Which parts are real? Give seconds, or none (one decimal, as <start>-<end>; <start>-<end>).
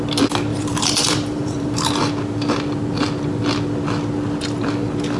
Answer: 0.0-0.5; 1.9-5.2